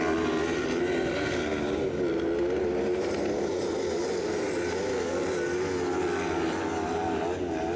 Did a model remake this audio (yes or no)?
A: no